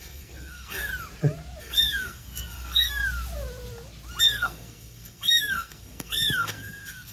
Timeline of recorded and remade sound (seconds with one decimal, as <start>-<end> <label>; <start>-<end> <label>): 0.0-0.9 remade; 0.9-1.6 recorded; 1.6-3.0 remade; 3.0-4.2 recorded; 4.2-7.1 remade